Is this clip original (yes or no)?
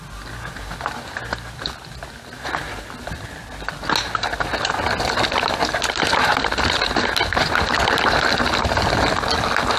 yes